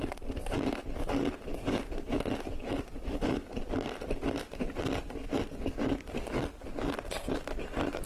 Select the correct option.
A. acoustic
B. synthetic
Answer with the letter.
A